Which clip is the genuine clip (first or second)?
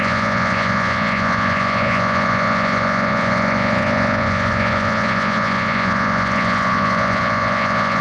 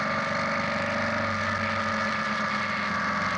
second